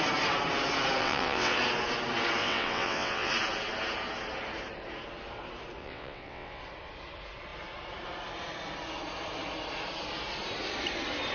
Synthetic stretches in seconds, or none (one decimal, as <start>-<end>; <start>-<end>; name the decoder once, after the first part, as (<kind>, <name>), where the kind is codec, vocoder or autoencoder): 1.0-1.6 (vocoder, WaveNeXt); 2.4-3.3; 5.8-6.6